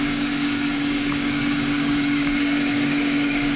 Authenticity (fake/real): fake